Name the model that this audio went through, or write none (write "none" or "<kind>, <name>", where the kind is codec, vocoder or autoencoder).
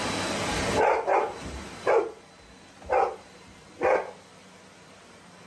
none